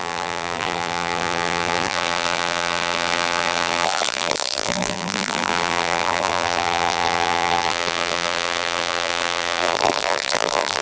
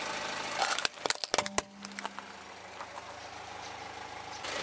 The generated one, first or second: first